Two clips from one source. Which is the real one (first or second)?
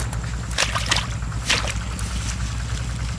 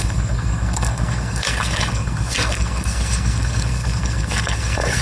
first